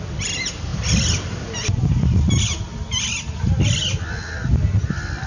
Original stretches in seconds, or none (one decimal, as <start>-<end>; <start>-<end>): 0.0-0.7; 2.0-5.3